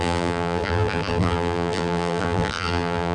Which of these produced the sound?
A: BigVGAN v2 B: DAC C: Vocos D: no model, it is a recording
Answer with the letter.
A